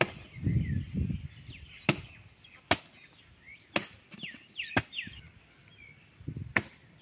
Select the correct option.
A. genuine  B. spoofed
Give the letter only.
A